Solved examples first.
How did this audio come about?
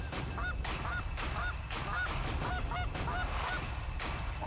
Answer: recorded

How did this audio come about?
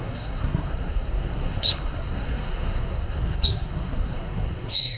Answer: remade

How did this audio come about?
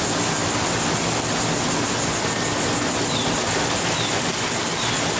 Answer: recorded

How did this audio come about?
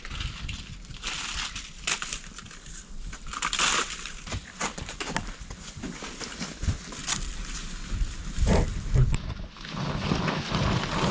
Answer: recorded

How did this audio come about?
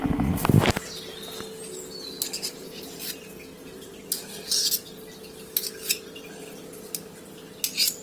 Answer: recorded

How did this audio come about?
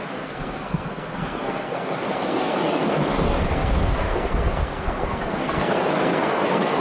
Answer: remade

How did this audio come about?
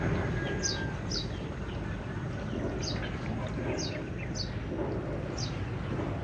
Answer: recorded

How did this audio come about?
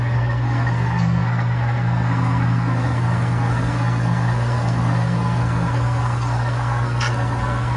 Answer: remade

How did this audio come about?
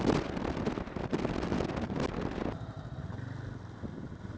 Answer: recorded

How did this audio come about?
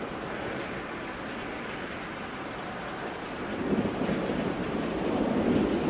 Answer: recorded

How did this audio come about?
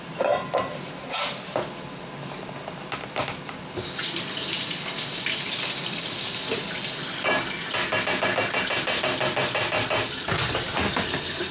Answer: recorded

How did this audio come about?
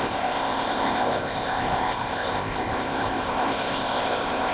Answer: remade